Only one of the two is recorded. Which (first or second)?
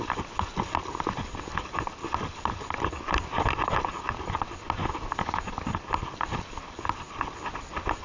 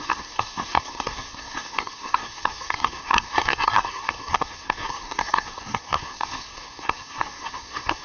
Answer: first